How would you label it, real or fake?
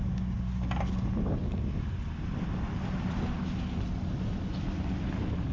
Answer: real